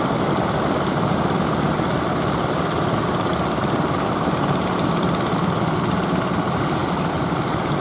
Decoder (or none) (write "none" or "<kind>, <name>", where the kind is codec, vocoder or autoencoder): none